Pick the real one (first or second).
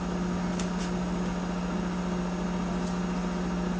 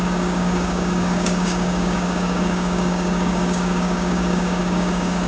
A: first